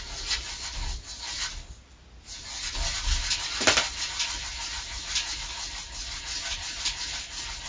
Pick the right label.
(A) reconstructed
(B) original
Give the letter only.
B